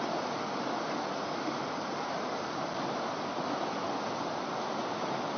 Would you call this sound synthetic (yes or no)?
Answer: no